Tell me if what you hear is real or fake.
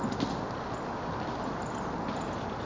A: real